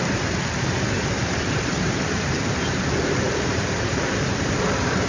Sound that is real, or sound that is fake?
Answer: fake